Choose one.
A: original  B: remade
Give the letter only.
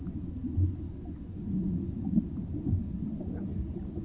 A